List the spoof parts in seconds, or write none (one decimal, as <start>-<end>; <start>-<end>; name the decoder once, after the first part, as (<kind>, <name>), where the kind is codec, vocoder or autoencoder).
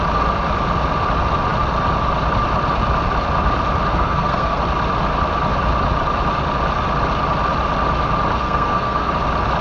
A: 3.9-4.6 (codec, SNAC); 8.4-9.1